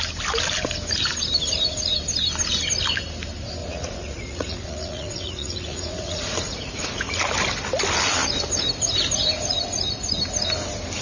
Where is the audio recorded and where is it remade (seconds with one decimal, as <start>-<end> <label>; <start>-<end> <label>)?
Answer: 0.0-3.6 recorded; 3.6-7.2 remade; 7.2-11.0 recorded